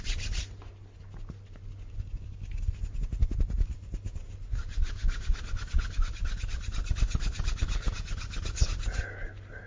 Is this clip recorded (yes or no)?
yes